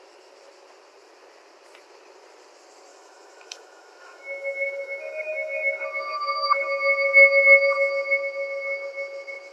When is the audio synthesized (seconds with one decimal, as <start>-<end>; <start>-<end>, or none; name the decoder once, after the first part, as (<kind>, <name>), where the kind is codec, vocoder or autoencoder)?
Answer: 2.9-6.6 (autoencoder, DAC-VAE)